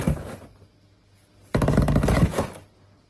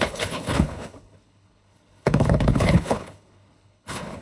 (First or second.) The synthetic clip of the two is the second